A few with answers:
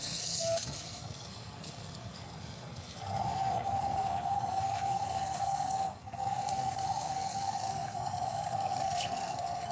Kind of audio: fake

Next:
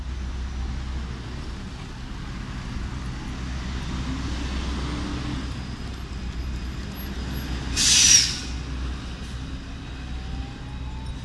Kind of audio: real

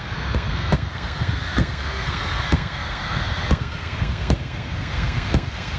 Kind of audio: fake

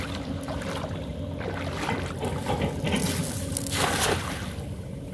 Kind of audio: real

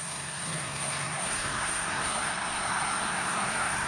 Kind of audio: fake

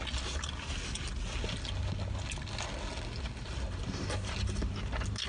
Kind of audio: real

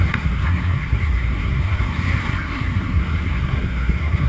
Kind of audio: fake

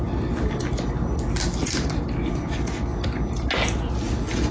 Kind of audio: real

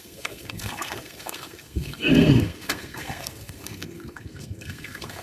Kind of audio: fake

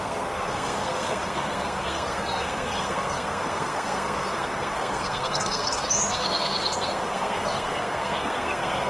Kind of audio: fake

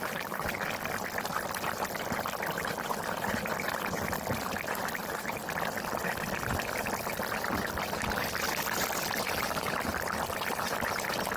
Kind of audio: real